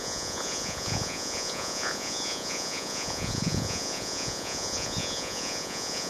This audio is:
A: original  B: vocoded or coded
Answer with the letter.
B